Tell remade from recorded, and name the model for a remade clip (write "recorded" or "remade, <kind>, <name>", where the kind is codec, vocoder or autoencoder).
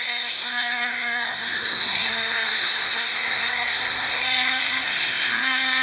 remade, codec, SNAC